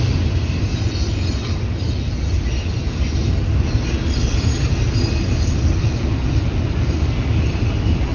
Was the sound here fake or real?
real